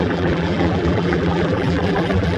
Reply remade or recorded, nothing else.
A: remade